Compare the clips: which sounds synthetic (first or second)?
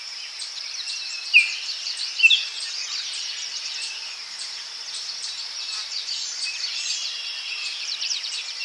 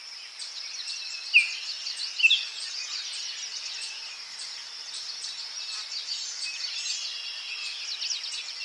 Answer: first